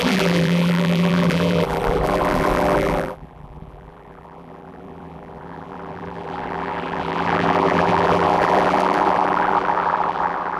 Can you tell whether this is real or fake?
fake